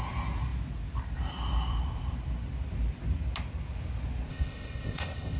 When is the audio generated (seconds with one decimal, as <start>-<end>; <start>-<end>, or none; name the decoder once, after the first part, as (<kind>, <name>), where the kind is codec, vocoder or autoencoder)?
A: 4.3-5.4 (codec, ZipCodec)